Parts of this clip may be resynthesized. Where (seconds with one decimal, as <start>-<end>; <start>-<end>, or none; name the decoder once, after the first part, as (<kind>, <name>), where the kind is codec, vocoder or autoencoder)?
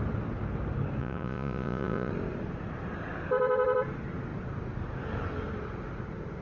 1.0-2.1 (vocoder, Vocos)